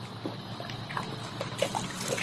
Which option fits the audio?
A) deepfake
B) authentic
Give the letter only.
B